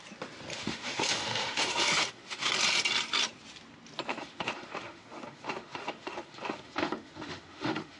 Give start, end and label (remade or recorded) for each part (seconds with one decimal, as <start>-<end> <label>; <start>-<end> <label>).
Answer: 0.0-0.5 recorded; 0.5-2.5 remade; 2.5-4.1 recorded; 4.1-8.0 remade